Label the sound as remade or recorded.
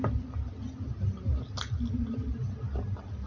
recorded